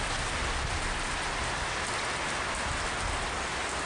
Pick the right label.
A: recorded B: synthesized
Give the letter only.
A